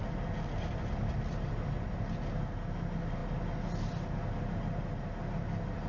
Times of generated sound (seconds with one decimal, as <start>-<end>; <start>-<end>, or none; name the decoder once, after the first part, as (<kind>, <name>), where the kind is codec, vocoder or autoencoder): none